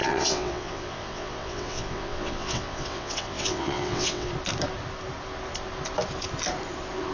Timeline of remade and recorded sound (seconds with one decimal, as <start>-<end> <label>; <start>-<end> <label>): 0.0-4.3 remade; 4.3-7.1 recorded